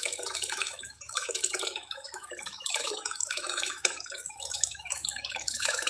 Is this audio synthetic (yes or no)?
yes